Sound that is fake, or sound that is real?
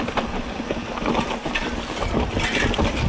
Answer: real